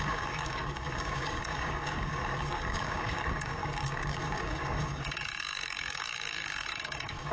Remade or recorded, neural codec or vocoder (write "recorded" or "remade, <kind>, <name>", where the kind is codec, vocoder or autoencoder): remade, codec, DAC